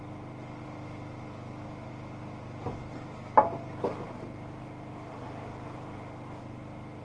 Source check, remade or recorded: recorded